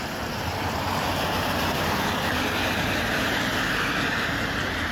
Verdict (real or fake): fake